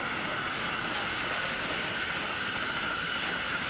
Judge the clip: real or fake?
real